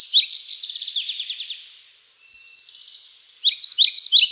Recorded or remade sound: recorded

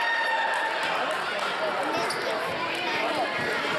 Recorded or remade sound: recorded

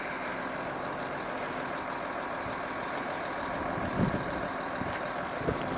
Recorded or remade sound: recorded